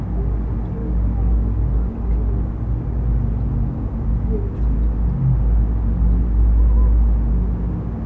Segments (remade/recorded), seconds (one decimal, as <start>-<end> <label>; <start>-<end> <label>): 0.0-0.8 recorded; 0.8-1.6 remade; 1.6-8.1 recorded